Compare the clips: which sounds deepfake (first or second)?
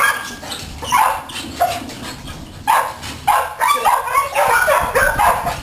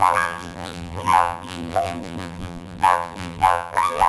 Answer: second